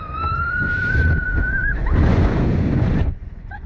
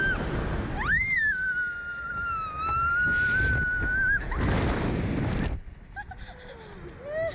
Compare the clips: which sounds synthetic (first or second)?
first